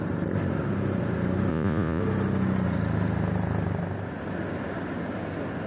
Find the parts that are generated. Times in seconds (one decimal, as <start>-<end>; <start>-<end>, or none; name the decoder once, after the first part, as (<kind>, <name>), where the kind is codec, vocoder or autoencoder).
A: 1.5-2.0 (vocoder, Vocos)